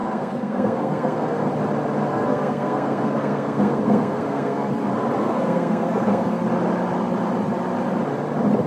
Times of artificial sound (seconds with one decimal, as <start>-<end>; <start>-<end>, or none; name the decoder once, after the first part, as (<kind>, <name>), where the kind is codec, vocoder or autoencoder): 0.0-1.5 (codec, SNAC); 2.1-4.7; 5.2-6.4